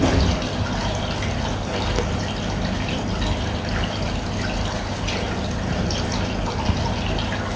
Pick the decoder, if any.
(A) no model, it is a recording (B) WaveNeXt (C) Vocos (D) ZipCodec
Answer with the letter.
A